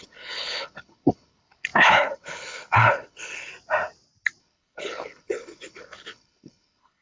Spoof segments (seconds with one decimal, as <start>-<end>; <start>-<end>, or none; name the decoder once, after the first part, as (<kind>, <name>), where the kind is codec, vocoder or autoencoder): 0.0-3.5 (codec, HILCodec); 4.4-7.0